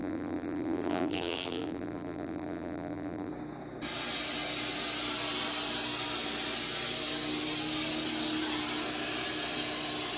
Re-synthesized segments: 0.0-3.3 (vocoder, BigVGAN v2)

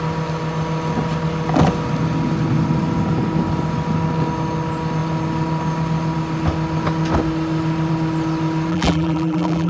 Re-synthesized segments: 8.7-9.7 (vocoder, BigVGAN v2)

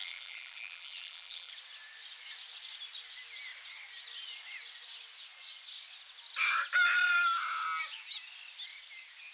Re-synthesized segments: 0.0-1.5 (vocoder, BigVGAN v2)

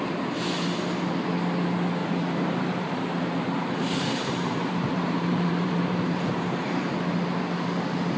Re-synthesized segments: 2.0-6.9 (vocoder, BigVGAN v2)

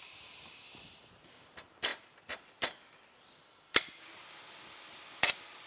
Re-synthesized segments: 0.0-5.7 (vocoder, BigVGAN v2)